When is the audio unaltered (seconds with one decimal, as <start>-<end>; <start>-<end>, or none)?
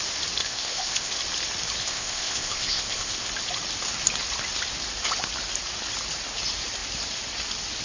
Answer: 0.0-0.4; 1.1-1.8; 3.3-7.8